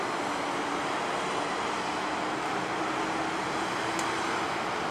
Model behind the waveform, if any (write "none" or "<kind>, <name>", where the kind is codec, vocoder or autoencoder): none